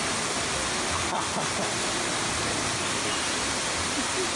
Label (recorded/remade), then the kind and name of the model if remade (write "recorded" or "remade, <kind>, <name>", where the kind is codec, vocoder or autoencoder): recorded